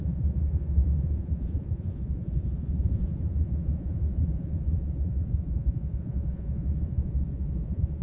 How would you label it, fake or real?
fake